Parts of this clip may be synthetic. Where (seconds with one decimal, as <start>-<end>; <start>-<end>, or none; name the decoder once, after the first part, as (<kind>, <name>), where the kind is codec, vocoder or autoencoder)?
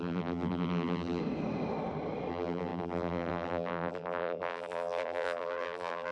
0.0-1.2 (vocoder, BigVGAN v2); 2.3-6.1